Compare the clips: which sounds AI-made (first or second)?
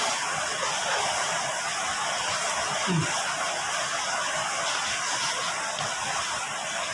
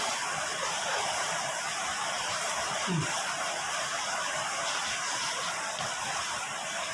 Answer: second